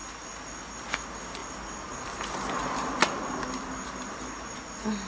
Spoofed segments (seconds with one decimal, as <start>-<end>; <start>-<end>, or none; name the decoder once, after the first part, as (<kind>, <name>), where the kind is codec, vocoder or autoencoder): none